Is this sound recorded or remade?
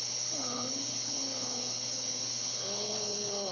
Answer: remade